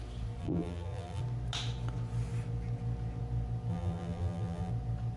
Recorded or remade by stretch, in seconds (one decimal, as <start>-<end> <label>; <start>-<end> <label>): 0.0-0.4 recorded; 0.4-1.2 remade; 1.2-3.7 recorded; 3.7-4.7 remade; 4.7-5.2 recorded